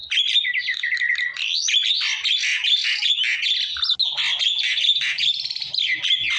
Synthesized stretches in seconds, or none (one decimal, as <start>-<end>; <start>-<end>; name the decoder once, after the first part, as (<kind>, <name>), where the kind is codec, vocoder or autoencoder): none